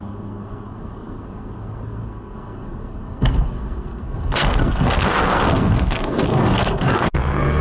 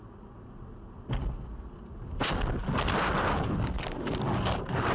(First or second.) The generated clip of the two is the first